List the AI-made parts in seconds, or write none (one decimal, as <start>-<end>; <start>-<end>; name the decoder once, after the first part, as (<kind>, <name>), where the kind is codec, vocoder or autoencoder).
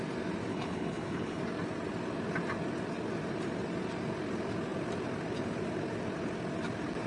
0.5-1.4 (codec, HILCodec)